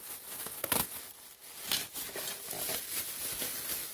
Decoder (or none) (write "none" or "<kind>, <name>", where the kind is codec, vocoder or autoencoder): none